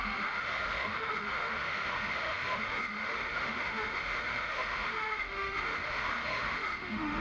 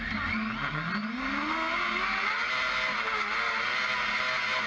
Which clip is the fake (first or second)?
first